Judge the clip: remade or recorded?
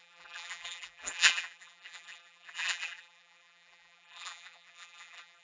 remade